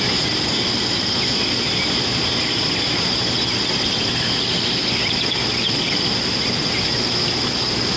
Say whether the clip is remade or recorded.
recorded